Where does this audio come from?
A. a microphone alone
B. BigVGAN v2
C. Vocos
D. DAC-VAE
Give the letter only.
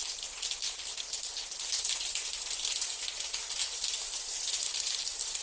B